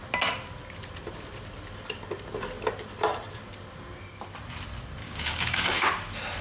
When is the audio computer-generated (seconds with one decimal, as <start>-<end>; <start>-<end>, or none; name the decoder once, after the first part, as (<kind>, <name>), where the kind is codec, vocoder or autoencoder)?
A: 5.0-5.9 (codec, DAC)